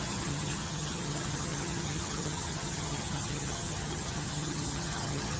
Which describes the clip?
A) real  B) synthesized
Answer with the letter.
B